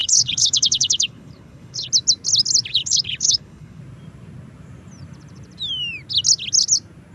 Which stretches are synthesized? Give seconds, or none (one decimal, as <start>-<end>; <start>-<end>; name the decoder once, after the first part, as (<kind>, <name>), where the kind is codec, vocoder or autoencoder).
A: 0.0-1.9 (codec, HILCodec); 2.7-3.8